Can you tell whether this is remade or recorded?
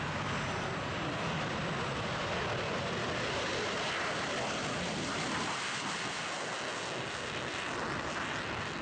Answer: recorded